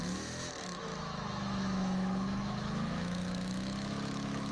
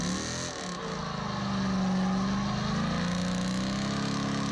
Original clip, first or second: second